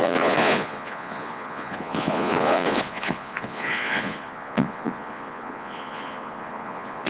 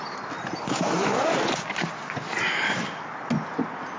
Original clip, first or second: second